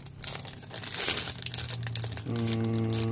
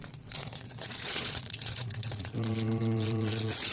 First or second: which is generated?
second